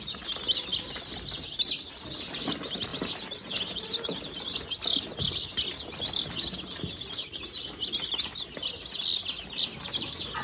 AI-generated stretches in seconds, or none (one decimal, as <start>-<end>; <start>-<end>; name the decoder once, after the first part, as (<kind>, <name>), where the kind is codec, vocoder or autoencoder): none